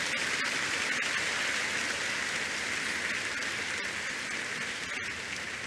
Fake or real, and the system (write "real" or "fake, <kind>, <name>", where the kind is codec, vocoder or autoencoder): real